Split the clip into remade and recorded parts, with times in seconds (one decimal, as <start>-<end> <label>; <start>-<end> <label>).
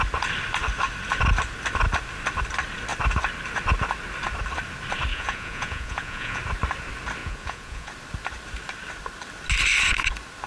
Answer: 0.0-5.1 recorded; 5.1-6.4 remade; 6.4-7.2 recorded; 7.2-7.9 remade; 7.9-10.5 recorded